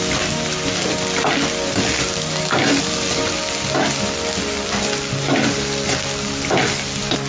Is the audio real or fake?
real